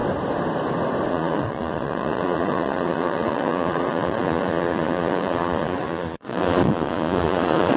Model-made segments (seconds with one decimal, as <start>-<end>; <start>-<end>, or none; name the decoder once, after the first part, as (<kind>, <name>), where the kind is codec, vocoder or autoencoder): 1.1-7.8 (vocoder, Vocos)